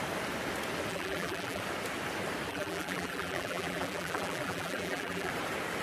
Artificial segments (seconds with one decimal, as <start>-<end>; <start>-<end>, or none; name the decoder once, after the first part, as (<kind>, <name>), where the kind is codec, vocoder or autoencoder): 0.9-1.6 (vocoder, BigVGAN v2); 2.5-5.3